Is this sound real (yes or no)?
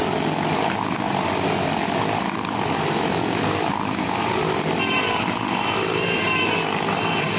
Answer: yes